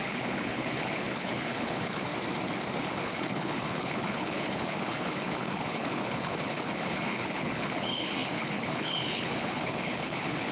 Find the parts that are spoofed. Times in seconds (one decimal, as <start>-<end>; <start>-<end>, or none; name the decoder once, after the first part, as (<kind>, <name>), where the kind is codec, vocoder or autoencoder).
0.0-2.1 (codec, HILCodec); 2.8-10.5